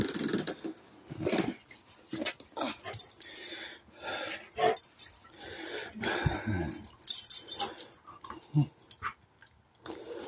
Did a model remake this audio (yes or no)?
no